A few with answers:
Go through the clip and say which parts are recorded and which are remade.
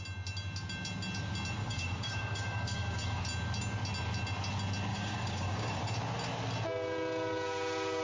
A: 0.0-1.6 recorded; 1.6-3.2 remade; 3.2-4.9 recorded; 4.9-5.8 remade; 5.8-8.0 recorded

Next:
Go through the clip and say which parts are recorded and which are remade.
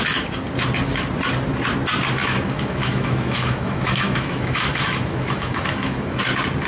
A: 0.0-2.2 recorded; 2.2-6.2 remade; 6.2-6.7 recorded